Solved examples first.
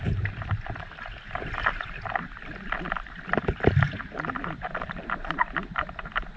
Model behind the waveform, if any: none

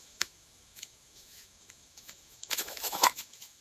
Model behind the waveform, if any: autoencoder, DAC-VAE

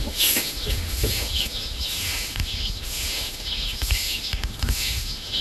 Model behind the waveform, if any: autoencoder, DAC-VAE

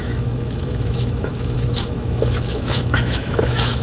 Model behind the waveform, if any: autoencoder, DAC-VAE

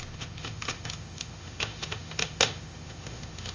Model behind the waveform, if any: autoencoder, DAC-VAE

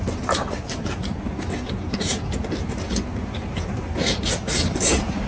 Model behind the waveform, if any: none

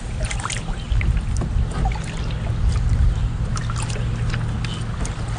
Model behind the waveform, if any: none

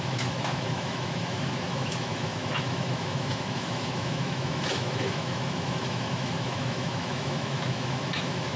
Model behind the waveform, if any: autoencoder, DAC-VAE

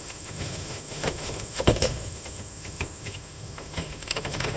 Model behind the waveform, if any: autoencoder, DAC-VAE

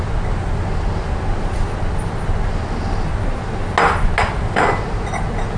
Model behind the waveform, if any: none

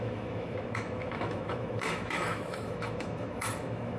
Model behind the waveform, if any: autoencoder, DAC-VAE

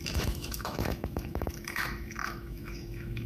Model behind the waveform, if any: autoencoder, DAC-VAE